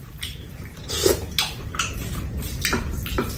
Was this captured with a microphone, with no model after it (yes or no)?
no